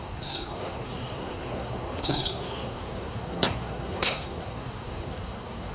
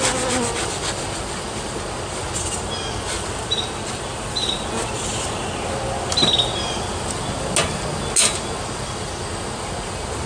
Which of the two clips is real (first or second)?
second